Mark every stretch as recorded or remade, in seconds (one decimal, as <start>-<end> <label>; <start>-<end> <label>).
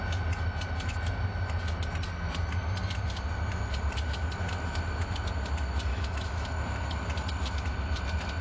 0.0-5.9 recorded; 5.9-6.5 remade; 6.5-8.4 recorded